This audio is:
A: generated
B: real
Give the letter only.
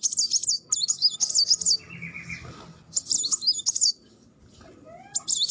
B